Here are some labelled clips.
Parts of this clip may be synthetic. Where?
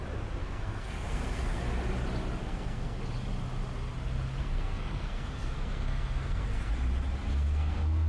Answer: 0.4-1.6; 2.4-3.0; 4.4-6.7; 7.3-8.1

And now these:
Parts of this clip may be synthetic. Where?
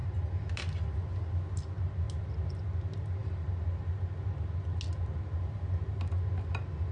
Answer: none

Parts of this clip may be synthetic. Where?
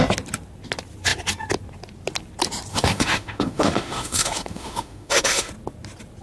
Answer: 2.7-5.5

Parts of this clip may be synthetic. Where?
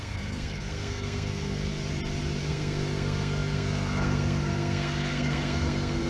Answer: 0.0-1.7; 2.4-6.1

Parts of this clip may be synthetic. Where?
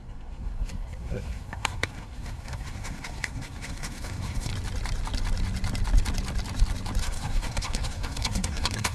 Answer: 0.0-4.5; 7.0-8.9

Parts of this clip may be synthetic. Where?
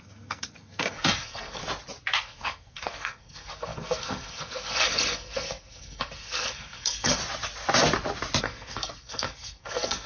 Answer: 0.0-1.6; 2.2-7.2; 8.4-10.1